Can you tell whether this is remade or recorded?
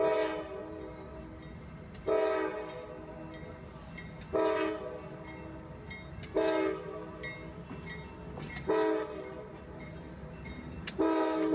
recorded